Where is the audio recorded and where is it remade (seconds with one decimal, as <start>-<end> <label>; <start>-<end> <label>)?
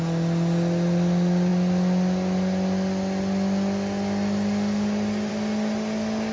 0.0-6.3 recorded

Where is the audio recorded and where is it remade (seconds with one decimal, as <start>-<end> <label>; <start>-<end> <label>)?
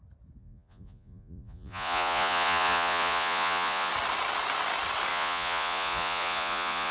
0.0-0.4 recorded; 0.4-3.9 remade; 3.9-5.1 recorded; 5.1-6.9 remade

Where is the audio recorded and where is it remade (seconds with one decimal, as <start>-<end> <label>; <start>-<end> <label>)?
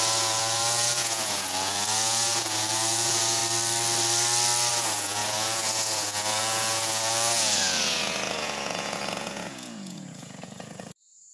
0.0-3.4 remade; 3.4-4.7 recorded; 4.7-11.3 remade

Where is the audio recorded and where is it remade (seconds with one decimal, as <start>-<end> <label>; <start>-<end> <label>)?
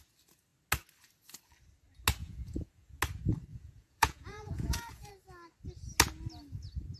0.0-2.2 recorded; 2.2-3.0 remade; 3.0-3.5 recorded; 3.5-5.1 remade; 5.1-7.0 recorded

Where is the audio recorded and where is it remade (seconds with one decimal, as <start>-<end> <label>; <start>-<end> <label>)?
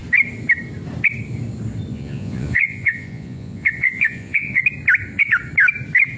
0.0-1.9 recorded; 1.9-4.6 remade; 4.6-6.2 recorded